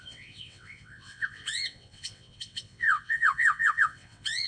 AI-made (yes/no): yes